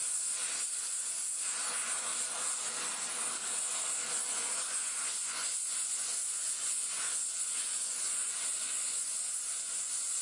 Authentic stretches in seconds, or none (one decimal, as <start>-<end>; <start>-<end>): 0.0-0.6; 2.1-4.3